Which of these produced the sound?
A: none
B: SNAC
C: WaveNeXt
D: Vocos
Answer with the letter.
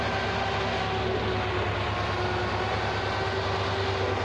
A